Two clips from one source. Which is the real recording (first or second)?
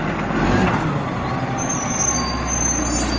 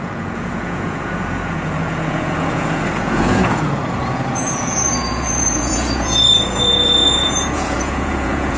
first